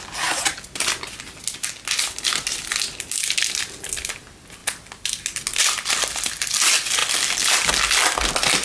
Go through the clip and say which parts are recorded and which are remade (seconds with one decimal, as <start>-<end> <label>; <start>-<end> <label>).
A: 0.0-8.6 recorded